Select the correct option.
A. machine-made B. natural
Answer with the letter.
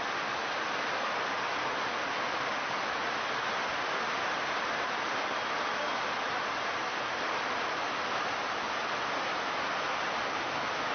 B